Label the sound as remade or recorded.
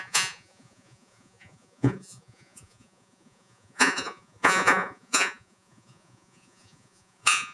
remade